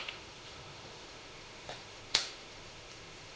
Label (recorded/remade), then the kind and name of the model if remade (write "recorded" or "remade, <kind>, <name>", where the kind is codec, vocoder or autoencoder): remade, autoencoder, DAC-VAE